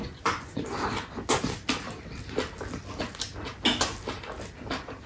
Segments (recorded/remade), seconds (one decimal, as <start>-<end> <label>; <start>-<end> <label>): 0.0-0.6 remade; 0.6-5.1 recorded